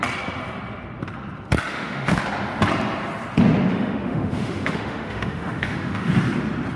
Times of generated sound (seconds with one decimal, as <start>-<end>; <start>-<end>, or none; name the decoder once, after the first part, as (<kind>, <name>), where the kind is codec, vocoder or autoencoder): 1.7-2.2 (autoencoder, DAC-VAE); 3.7-6.1